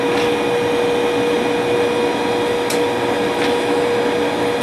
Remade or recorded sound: recorded